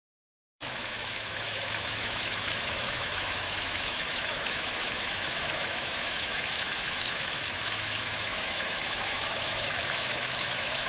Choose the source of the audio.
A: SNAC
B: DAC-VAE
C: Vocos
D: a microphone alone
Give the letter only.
B